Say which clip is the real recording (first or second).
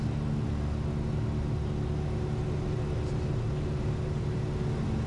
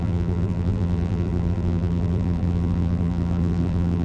first